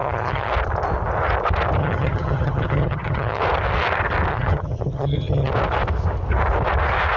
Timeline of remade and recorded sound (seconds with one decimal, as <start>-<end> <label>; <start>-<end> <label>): 0.0-0.5 remade; 0.5-1.8 recorded; 1.8-3.4 remade; 3.4-4.3 recorded; 4.3-5.5 remade; 5.5-7.2 recorded